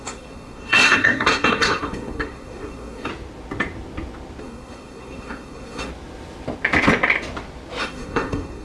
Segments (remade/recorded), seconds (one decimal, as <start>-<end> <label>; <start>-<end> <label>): 0.0-3.1 remade; 3.1-4.4 recorded; 4.4-5.9 remade; 5.9-7.8 recorded; 7.8-8.6 remade